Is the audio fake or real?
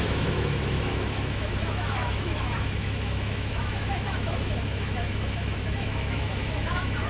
fake